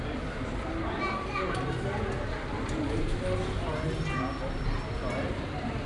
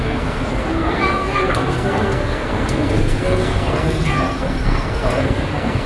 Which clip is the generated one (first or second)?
second